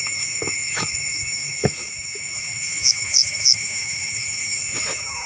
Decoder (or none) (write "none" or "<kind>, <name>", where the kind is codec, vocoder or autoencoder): autoencoder, DAC-VAE